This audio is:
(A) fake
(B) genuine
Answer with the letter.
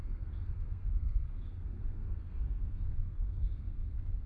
A